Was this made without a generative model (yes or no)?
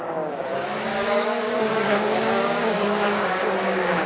no